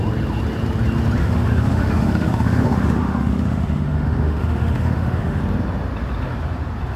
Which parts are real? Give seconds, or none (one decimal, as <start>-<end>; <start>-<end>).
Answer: 0.0-1.2; 5.4-7.0